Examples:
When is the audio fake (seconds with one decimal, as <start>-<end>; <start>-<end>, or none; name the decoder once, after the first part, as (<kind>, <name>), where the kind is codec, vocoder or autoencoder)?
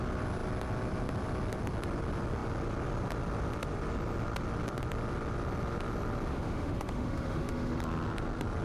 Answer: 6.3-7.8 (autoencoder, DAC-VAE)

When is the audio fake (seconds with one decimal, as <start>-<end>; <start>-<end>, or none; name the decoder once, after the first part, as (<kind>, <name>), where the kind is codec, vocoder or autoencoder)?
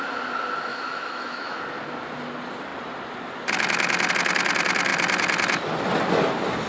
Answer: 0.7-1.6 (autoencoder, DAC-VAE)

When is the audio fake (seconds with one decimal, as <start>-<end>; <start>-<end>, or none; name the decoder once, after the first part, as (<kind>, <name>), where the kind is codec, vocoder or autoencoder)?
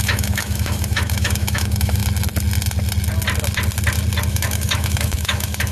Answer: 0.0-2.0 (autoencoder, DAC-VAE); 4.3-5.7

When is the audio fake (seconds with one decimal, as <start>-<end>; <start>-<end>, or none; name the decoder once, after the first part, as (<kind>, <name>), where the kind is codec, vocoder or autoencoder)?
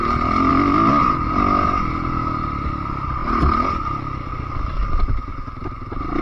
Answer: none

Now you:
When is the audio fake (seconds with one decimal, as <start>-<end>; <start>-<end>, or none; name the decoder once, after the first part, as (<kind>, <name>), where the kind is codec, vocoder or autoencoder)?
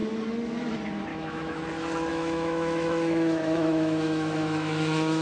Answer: 1.1-1.6 (autoencoder, DAC-VAE); 2.1-5.2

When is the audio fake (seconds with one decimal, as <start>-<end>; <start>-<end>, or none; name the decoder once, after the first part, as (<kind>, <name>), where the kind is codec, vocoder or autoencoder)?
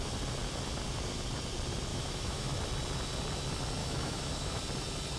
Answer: 1.9-2.6 (autoencoder, DAC-VAE); 3.8-4.6